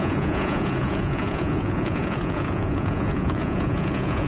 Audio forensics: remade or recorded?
remade